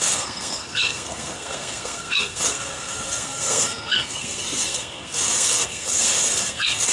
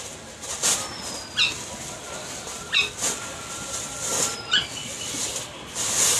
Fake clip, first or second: first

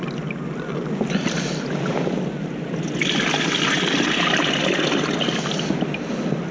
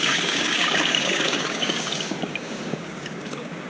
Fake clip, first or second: second